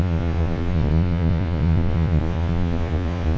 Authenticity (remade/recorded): remade